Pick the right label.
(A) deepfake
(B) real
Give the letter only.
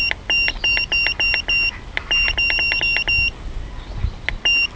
B